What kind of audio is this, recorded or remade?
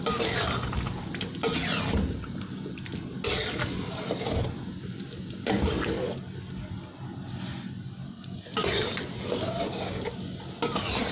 recorded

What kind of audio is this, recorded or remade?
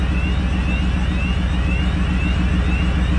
recorded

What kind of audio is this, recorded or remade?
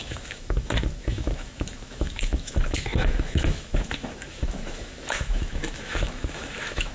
remade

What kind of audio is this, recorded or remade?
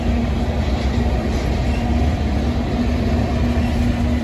recorded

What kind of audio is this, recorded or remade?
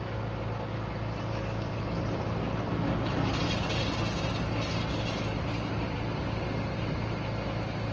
recorded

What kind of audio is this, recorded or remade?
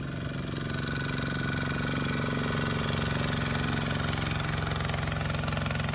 recorded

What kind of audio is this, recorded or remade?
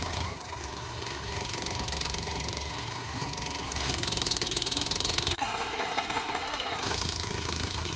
remade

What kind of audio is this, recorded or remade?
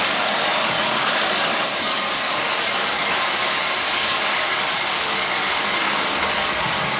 remade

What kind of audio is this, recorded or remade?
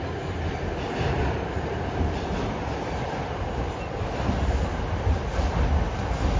recorded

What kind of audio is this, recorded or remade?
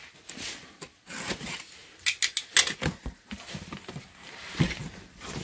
recorded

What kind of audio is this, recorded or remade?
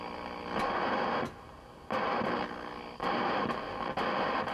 recorded